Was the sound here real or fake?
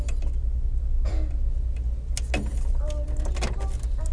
real